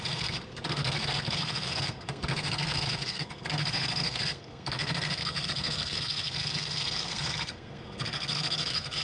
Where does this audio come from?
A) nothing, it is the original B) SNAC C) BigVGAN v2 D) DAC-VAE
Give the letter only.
B